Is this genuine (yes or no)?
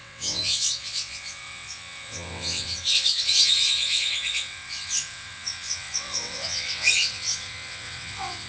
no